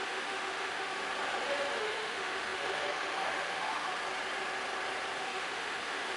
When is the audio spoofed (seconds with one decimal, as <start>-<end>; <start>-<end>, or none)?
0.0-1.0; 1.8-4.0; 5.2-6.2